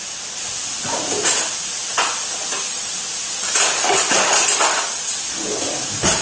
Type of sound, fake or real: real